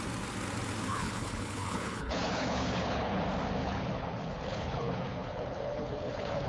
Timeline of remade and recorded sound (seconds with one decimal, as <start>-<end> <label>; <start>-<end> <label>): 0.0-0.9 recorded; 0.9-3.2 remade; 3.2-3.6 recorded; 3.6-6.5 remade